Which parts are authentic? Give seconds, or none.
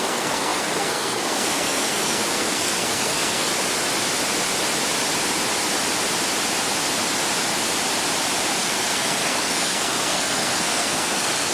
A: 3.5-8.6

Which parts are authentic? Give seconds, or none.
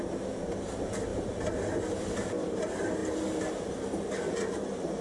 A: 0.0-5.0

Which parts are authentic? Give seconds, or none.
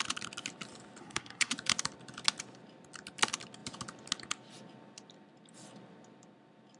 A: 0.0-1.0; 1.5-6.8